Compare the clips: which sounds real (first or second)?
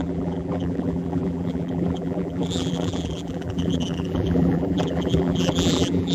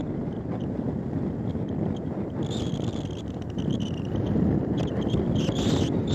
second